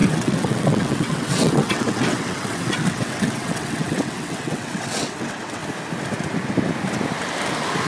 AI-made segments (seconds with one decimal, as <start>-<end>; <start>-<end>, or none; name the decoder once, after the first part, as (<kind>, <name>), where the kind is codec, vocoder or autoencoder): 0.0-5.6 (vocoder, WaveNeXt)